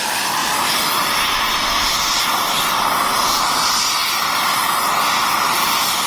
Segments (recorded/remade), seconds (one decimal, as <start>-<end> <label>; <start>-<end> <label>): 0.0-6.1 recorded